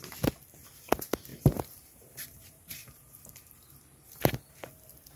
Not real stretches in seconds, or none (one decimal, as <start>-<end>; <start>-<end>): 1.3-4.2